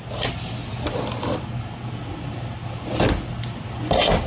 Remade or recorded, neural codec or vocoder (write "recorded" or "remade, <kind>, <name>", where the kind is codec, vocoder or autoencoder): recorded